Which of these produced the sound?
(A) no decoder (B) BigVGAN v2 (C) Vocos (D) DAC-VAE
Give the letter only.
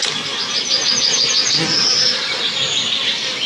A